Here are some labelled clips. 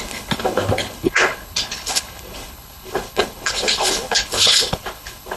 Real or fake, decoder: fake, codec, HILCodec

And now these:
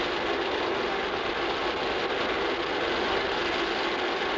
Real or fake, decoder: real